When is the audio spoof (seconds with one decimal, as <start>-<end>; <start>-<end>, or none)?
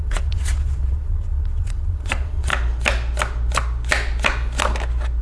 0.0-2.5